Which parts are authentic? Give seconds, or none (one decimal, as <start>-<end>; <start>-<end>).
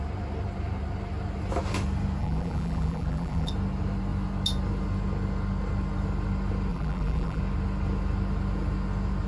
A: 0.0-2.2; 3.5-6.7; 7.4-9.3